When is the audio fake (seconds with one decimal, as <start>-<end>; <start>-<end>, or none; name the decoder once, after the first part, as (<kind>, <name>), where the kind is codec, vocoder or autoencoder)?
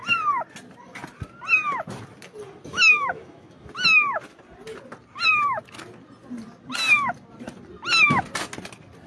2.7-3.7 (autoencoder, DAC-VAE)